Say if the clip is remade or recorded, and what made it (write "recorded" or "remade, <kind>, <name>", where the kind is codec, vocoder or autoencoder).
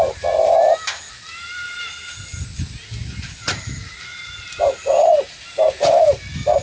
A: recorded